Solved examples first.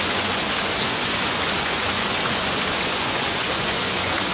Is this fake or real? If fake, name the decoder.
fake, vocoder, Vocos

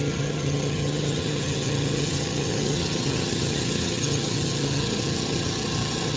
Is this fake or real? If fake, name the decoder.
fake, vocoder, HiFi-GAN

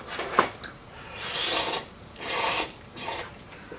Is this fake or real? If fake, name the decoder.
fake, vocoder, BigVGAN v2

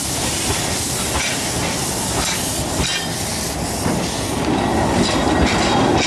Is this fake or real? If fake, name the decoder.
real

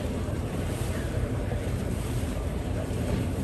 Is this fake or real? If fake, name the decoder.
fake, vocoder, BigVGAN v2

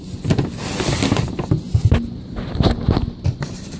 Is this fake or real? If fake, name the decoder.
real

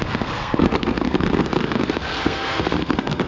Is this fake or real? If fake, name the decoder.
fake, codec, SNAC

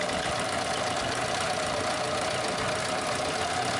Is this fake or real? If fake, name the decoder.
real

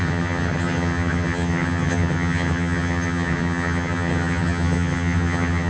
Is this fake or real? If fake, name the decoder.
fake, vocoder, HiFi-GAN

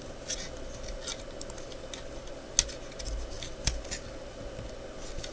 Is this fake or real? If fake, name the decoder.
real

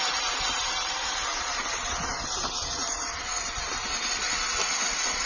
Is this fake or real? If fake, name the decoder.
real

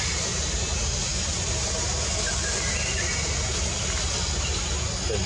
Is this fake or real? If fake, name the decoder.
real